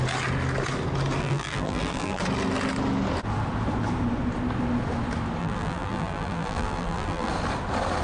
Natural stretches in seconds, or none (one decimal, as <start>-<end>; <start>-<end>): 0.0-1.2; 2.2-5.4; 7.3-8.0